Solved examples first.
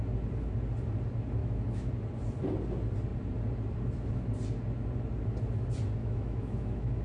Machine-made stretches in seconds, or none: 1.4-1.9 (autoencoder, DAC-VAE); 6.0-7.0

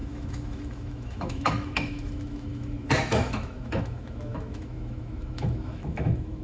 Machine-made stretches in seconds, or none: 0.0-6.4 (autoencoder, DAC-VAE)

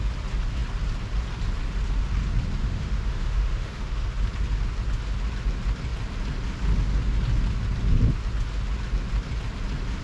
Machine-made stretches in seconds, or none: 2.6-4.1 (autoencoder, DAC-VAE)

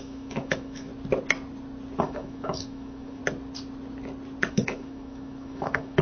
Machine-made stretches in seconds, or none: 0.0-0.9 (autoencoder, DAC-VAE); 2.0-3.2; 4.5-6.0

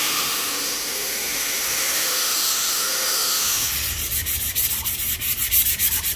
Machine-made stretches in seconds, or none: 0.0-3.7 (autoencoder, DAC-VAE)

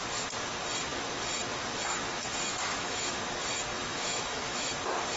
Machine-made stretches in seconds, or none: 2.5-3.2 (autoencoder, DAC-VAE); 3.7-4.7

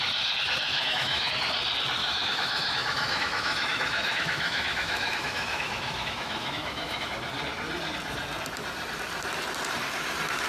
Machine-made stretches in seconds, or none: 0.7-1.3 (autoencoder, DAC-VAE); 2.0-7.1

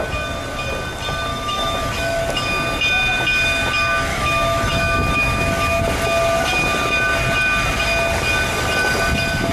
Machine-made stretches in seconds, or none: 1.3-2.2 (autoencoder, DAC-VAE); 4.1-5.8